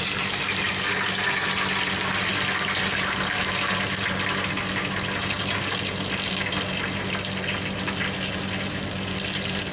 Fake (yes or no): no